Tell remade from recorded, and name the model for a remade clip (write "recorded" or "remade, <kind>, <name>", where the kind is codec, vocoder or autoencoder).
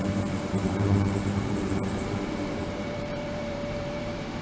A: remade, vocoder, BigVGAN v2